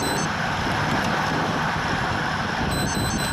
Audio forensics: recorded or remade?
recorded